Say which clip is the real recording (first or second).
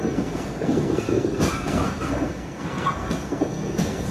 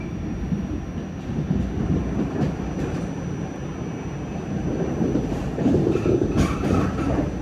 second